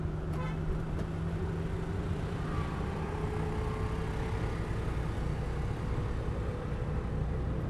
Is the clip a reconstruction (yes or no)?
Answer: no